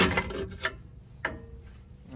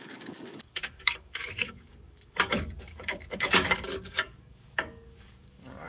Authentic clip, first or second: first